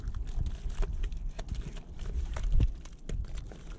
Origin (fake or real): real